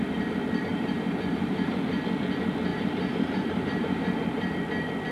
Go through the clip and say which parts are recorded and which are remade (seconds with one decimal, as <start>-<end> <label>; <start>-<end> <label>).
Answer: 0.0-0.7 recorded; 0.7-1.8 remade; 1.8-2.7 recorded; 2.7-4.5 remade; 4.5-5.1 recorded